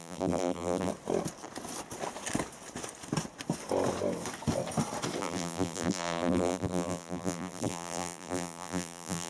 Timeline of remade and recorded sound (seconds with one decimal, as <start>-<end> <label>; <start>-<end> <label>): 0.0-0.9 remade; 0.9-5.2 recorded; 5.2-9.3 remade